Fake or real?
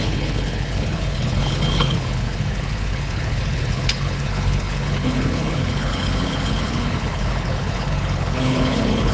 fake